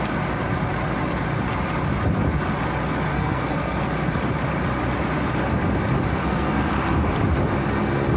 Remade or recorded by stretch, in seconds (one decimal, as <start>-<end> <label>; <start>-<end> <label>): 0.0-3.1 recorded; 3.1-3.9 remade; 3.9-6.2 recorded; 6.2-6.7 remade; 6.7-8.2 recorded